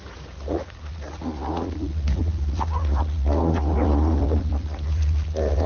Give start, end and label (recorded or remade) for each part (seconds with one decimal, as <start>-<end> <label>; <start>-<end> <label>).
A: 0.0-5.7 remade